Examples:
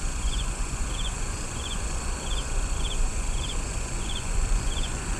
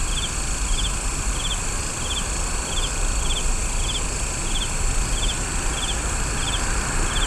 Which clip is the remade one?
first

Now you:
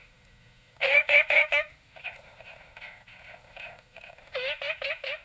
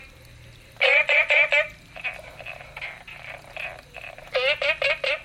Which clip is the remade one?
first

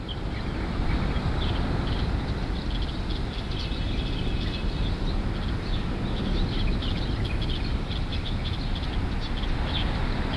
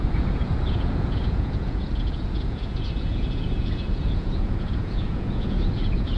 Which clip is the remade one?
second